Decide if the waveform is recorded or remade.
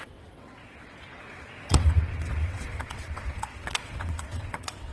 remade